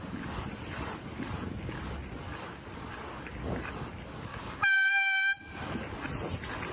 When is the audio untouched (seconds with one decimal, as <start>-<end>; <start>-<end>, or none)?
0.0-4.3; 5.7-6.7